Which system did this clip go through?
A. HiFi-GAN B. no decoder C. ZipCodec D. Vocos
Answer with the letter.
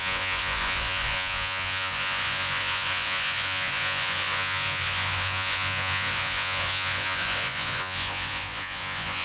D